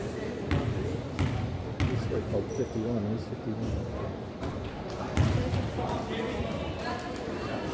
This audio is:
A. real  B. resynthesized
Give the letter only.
A